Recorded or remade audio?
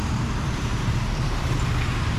remade